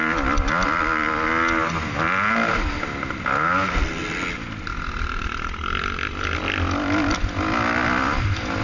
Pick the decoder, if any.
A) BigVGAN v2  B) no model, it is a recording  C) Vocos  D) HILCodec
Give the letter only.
B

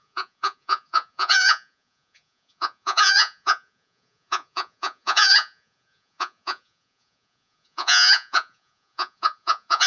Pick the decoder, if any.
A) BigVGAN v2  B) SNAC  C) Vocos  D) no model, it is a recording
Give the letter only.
C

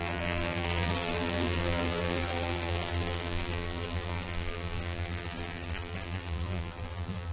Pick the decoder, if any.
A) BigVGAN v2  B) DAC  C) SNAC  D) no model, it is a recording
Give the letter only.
A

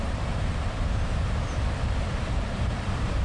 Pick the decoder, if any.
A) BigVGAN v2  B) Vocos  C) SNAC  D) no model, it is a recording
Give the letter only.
A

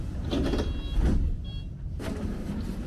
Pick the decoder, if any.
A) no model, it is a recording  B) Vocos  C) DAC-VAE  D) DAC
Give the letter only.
A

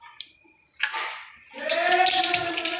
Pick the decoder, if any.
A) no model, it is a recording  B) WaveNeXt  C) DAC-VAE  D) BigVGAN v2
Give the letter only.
A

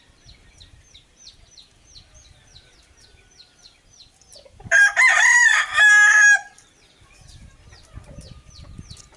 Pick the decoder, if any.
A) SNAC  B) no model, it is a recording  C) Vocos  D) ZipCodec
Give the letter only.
B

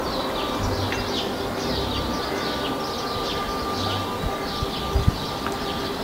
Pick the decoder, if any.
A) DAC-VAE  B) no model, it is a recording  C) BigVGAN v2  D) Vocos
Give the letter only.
B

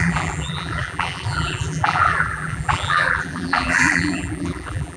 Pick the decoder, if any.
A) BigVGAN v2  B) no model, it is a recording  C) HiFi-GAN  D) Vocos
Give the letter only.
A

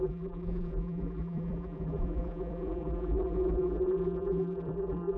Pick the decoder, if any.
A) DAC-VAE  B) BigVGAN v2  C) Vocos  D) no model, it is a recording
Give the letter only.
B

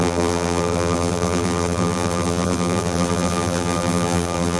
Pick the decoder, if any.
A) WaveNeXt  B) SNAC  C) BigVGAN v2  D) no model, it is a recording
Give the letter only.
C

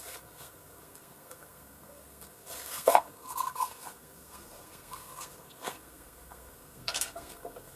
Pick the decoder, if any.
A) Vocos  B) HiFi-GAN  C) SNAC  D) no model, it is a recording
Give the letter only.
C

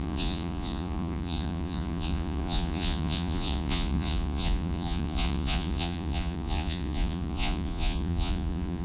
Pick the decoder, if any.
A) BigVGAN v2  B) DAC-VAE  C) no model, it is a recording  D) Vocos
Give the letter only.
D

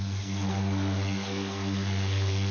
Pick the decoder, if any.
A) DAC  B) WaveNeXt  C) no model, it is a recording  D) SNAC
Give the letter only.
D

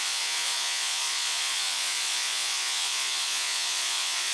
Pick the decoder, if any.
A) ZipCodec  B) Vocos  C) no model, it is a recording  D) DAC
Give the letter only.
B